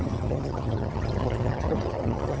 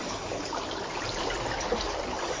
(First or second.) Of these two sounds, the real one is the second